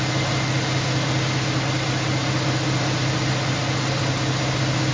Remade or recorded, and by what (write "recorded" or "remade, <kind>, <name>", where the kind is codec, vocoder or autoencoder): recorded